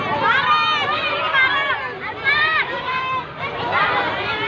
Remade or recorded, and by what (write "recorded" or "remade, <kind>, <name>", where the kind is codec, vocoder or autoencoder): recorded